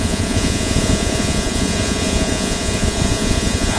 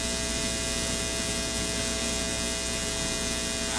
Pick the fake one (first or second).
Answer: first